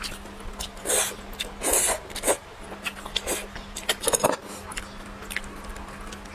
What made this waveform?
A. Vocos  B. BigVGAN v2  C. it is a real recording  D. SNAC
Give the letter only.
C